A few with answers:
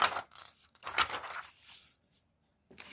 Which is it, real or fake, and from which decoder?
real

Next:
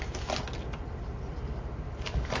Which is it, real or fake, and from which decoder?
real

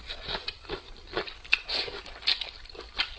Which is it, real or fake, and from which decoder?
real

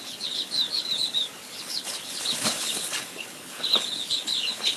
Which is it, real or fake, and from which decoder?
fake, codec, HILCodec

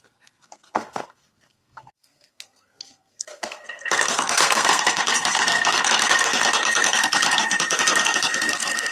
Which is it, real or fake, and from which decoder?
fake, codec, SNAC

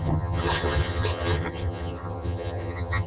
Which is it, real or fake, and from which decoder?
fake, vocoder, HiFi-GAN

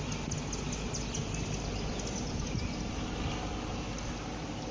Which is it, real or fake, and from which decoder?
real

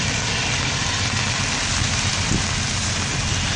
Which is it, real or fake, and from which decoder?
real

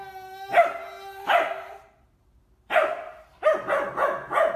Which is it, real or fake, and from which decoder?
real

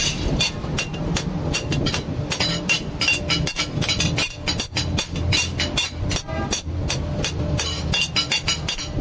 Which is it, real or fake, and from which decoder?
real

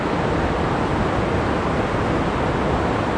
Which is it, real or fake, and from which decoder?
real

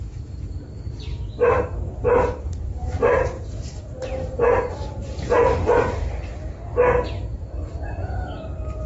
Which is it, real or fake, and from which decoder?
fake, vocoder, BigVGAN v2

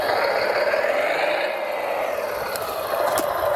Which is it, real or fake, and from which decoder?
real